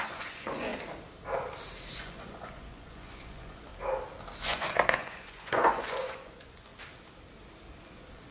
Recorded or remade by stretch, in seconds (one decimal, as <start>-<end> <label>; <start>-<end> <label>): 0.0-0.7 remade; 0.7-1.9 recorded; 1.9-3.7 remade; 3.7-4.4 recorded; 4.4-6.7 remade; 6.7-7.8 recorded; 7.8-8.3 remade